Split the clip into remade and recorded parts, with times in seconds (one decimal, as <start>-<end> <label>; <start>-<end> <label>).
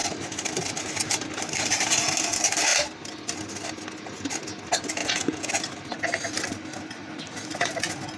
0.0-5.0 recorded; 5.0-5.5 remade; 5.5-8.2 recorded